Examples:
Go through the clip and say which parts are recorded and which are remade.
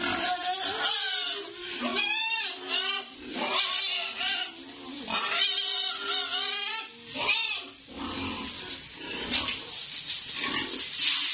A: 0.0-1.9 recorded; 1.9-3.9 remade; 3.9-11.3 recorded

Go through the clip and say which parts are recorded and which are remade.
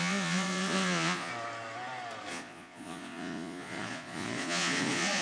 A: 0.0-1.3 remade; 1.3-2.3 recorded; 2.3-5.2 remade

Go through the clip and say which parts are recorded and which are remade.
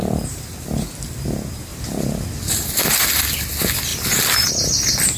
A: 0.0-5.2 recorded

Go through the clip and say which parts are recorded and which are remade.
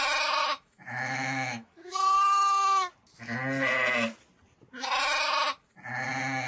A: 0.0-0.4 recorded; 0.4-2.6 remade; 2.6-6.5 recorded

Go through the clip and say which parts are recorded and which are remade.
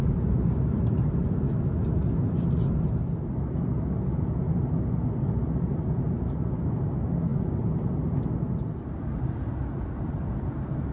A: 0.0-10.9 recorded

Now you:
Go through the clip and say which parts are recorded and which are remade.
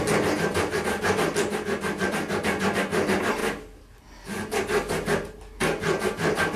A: 0.0-6.6 recorded